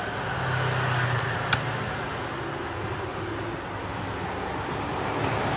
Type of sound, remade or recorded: recorded